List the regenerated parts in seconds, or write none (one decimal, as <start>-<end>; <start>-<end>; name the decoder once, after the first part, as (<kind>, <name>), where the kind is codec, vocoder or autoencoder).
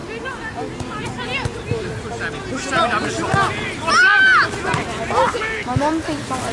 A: none